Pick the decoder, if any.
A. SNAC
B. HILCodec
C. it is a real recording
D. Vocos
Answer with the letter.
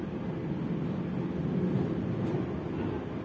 C